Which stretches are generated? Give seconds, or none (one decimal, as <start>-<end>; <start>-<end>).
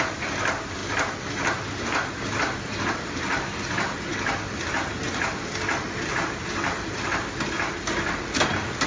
none